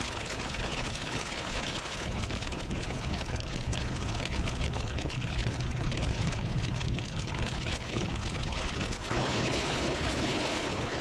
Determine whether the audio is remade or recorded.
remade